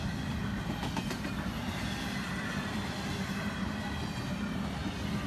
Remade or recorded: recorded